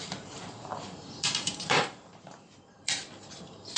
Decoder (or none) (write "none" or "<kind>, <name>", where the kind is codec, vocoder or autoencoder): vocoder, BigVGAN v2